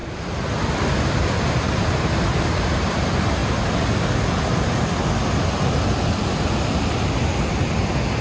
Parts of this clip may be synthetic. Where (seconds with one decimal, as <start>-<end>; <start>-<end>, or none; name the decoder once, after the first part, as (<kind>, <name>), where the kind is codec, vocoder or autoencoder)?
none